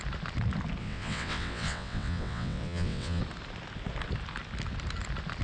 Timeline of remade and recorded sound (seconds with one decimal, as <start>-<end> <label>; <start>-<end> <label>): 0.0-0.8 recorded; 0.8-3.2 remade; 3.2-5.4 recorded